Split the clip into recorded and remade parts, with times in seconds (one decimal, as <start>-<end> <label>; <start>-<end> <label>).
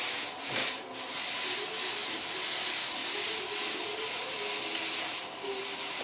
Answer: 0.0-6.0 recorded